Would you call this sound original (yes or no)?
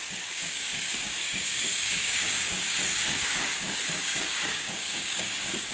no